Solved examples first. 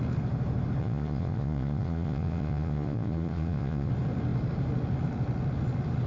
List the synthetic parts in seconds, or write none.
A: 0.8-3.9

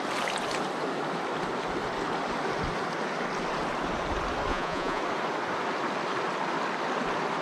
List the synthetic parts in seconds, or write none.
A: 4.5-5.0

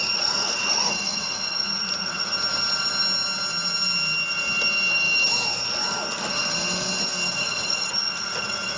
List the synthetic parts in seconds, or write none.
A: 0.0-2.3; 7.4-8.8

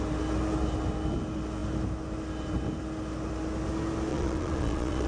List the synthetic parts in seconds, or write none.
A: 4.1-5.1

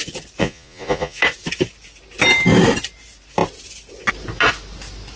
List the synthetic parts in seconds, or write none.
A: 0.4-1.2

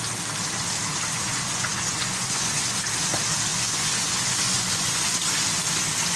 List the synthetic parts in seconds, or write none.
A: 1.1-2.8; 3.5-5.0